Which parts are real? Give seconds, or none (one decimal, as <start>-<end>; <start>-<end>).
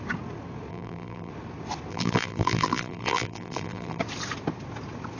0.0-0.7; 1.3-1.9; 4.0-5.2